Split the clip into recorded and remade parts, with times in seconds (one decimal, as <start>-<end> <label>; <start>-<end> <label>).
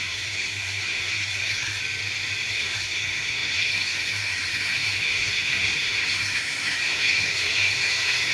0.0-1.8 remade; 1.8-2.5 recorded; 2.5-8.3 remade